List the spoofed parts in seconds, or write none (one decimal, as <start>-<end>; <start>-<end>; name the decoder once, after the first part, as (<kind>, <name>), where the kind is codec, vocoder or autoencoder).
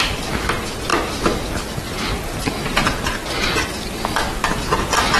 none